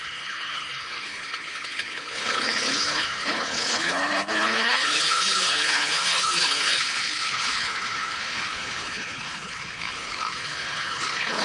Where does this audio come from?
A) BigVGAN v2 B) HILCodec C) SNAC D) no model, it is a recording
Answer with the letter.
B